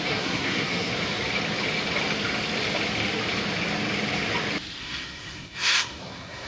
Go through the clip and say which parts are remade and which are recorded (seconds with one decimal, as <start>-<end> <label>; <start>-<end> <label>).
0.0-0.9 remade; 0.9-4.8 recorded; 4.8-6.5 remade